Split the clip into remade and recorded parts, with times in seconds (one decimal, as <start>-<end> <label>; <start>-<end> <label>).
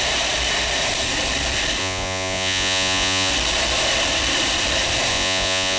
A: 0.0-1.8 recorded; 1.8-3.3 remade; 3.3-5.1 recorded; 5.1-5.8 remade